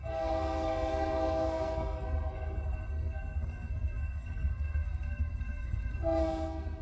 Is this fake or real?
fake